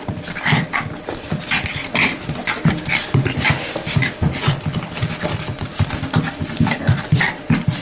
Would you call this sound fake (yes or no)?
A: no